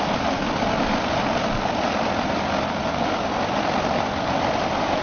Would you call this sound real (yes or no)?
yes